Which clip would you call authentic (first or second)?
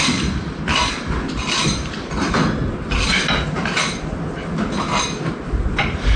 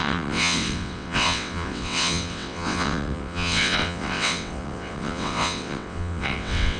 first